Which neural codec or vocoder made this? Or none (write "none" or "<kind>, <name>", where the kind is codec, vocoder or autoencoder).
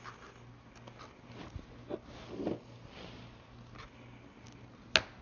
none